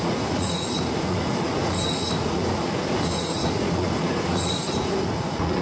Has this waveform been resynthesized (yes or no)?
yes